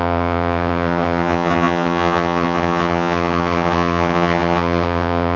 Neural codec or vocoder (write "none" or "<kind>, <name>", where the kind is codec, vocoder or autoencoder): vocoder, HiFi-GAN